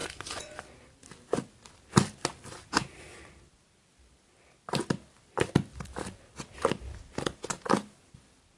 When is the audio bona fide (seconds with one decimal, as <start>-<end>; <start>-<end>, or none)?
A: 0.6-8.6